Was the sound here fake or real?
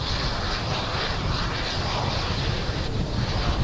real